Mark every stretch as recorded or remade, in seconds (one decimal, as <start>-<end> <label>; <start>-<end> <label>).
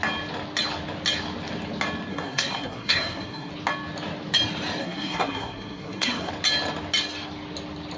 0.0-2.1 recorded; 2.1-3.5 remade; 3.5-4.8 recorded; 4.8-6.3 remade; 6.3-8.0 recorded